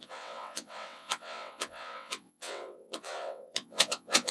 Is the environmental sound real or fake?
fake